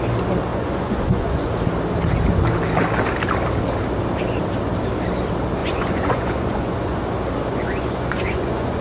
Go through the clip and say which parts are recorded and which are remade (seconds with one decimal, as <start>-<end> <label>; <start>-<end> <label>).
0.0-0.5 recorded; 0.5-1.5 remade; 1.5-5.6 recorded; 5.6-7.0 remade; 7.0-7.5 recorded; 7.5-8.8 remade